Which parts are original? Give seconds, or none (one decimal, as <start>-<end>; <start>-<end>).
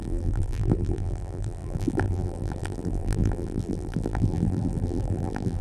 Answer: none